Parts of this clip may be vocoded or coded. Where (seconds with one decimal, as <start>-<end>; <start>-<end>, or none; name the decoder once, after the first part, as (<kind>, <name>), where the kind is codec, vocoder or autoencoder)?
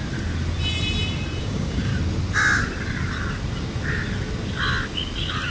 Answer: 1.4-1.9 (codec, DAC)